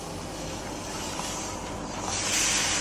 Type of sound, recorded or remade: recorded